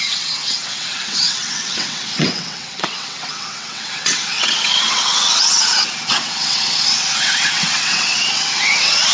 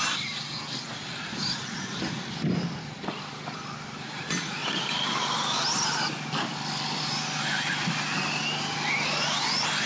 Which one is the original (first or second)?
second